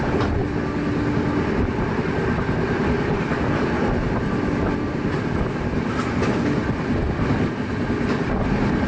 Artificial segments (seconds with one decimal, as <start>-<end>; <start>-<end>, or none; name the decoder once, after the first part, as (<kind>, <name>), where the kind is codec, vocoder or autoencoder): none